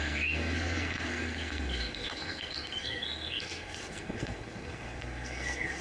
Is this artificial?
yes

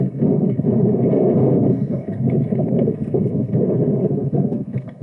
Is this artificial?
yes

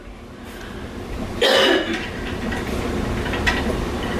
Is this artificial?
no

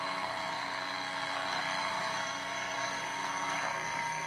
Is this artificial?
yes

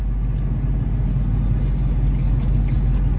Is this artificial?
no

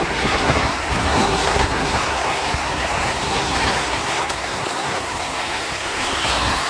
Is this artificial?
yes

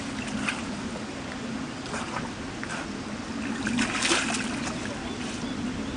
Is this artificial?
no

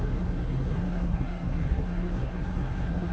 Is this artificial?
yes